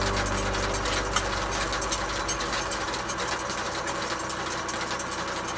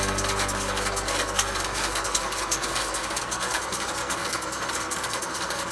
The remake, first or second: second